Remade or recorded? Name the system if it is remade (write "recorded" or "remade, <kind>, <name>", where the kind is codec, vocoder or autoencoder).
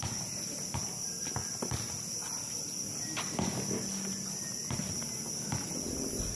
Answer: recorded